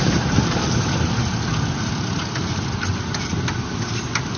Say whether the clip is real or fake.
real